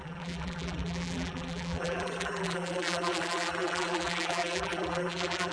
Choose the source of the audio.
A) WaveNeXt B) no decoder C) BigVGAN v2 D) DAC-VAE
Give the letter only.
C